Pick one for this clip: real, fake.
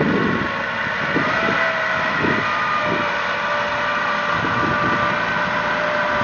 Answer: real